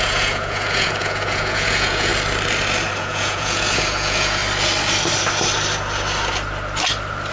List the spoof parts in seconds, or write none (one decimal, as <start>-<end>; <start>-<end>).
0.0-2.1; 3.0-4.4